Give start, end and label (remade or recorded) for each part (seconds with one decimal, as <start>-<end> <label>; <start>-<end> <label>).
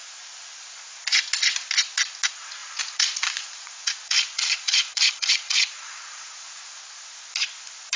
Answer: 0.0-2.6 recorded; 2.6-6.8 remade; 6.8-8.0 recorded